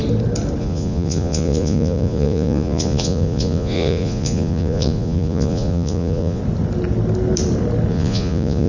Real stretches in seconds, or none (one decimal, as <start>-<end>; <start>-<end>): 0.0-0.6; 6.4-7.9